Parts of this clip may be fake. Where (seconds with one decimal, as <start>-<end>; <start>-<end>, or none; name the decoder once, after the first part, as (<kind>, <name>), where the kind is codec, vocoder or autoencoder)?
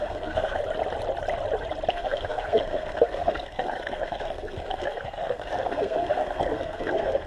0.0-0.6 (codec, SNAC); 1.9-7.3